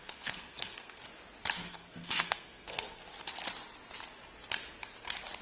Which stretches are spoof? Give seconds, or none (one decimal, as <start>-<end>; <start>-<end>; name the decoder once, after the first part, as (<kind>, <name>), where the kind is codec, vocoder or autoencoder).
0.0-1.0 (codec, SNAC); 1.7-3.0

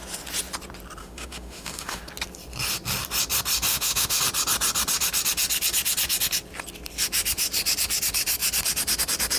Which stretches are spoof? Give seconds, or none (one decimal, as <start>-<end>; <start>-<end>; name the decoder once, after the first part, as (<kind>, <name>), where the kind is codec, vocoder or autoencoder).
1.0-2.0 (autoencoder, DAC-VAE); 3.7-4.2

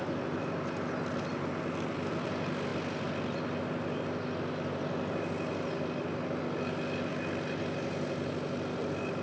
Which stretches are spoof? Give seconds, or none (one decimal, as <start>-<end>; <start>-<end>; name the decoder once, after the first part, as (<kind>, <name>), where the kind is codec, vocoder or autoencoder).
none

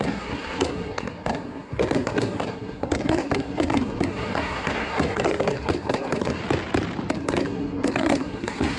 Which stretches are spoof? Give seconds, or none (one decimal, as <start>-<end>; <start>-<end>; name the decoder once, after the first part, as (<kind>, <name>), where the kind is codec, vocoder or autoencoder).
0.0-6.4 (codec, SNAC); 7.1-8.8

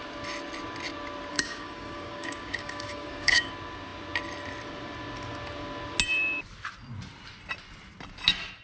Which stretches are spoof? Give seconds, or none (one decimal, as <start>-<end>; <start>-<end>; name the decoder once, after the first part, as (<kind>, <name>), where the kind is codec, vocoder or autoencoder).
1.3-3.5 (codec, DAC)

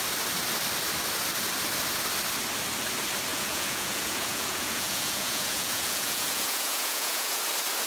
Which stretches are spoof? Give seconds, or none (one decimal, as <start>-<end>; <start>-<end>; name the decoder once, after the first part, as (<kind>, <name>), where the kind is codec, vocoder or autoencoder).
3.3-7.5 (vocoder, Vocos)

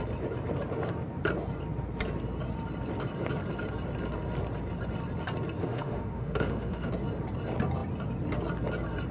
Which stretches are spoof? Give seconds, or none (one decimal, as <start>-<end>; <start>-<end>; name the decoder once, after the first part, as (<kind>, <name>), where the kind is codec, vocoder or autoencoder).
5.6-6.9 (autoencoder, DAC-VAE)